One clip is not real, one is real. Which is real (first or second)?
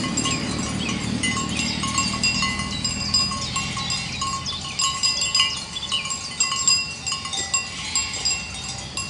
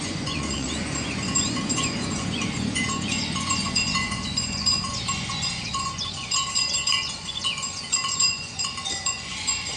first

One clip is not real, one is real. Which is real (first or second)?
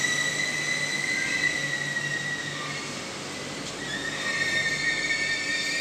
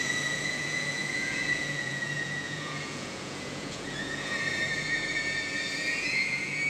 first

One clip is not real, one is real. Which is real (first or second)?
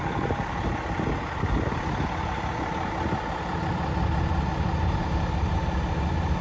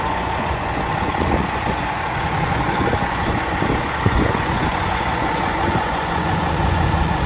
first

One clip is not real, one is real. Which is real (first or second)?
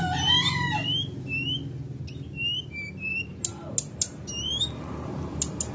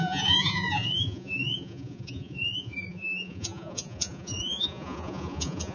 first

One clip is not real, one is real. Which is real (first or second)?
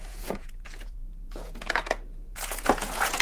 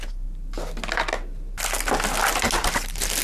second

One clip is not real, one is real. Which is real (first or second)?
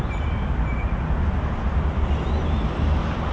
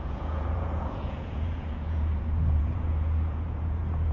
first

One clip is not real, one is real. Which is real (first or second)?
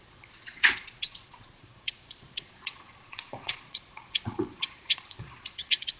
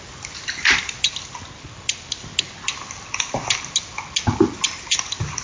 second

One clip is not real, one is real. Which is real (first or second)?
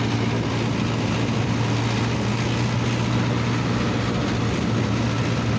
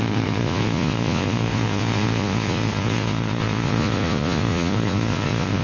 first